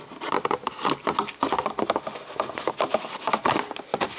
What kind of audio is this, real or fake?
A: real